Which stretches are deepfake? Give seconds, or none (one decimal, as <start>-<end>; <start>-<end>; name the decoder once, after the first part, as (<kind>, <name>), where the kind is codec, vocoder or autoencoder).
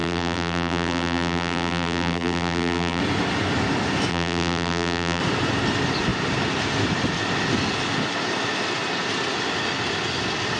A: 0.0-3.0 (vocoder, BigVGAN v2); 4.1-5.2